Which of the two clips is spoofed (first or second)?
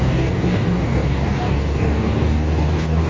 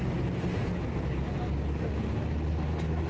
first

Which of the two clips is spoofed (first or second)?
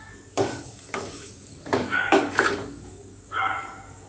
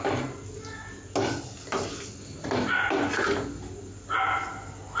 first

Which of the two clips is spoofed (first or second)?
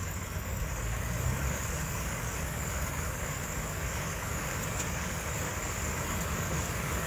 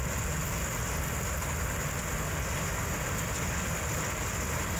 first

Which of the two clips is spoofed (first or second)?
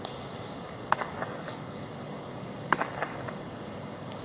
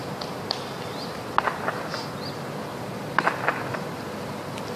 first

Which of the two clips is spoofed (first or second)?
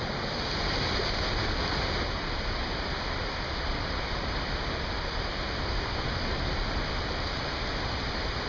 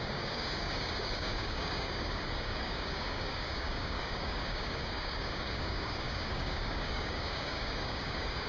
second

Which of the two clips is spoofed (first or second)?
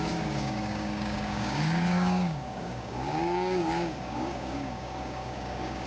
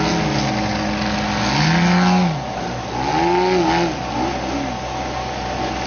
first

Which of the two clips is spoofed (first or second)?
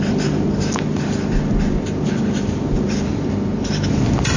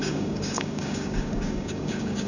second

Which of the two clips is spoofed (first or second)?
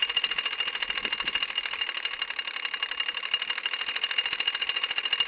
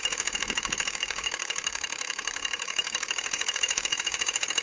second